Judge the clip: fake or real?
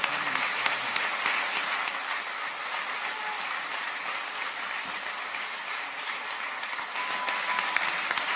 real